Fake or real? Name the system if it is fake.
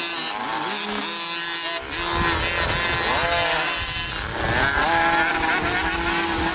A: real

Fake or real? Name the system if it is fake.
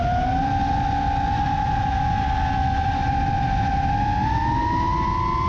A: real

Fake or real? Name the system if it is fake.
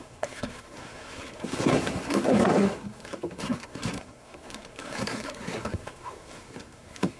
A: fake, codec, SNAC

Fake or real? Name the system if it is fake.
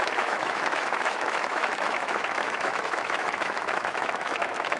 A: fake, autoencoder, DAC-VAE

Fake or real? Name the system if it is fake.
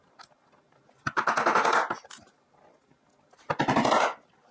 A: real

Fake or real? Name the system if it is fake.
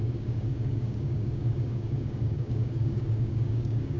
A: fake, codec, DAC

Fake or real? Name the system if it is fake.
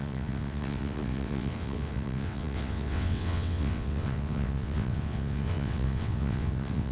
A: fake, vocoder, WaveNeXt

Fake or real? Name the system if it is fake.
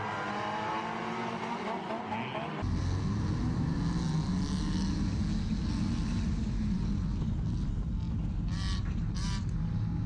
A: real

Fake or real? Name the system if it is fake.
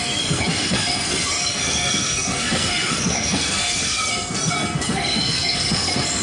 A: fake, codec, SNAC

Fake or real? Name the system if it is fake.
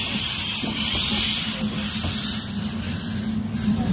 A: real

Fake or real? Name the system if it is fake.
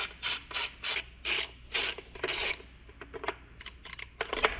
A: real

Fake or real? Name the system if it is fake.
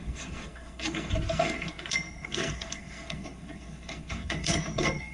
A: fake, codec, SNAC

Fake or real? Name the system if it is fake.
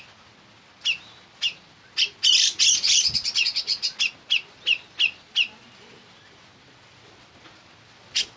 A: real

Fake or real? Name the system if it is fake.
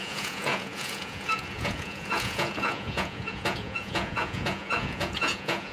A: fake, vocoder, Vocos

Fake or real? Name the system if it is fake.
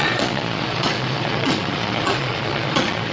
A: fake, vocoder, Vocos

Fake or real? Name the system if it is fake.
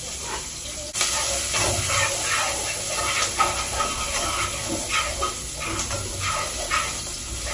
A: real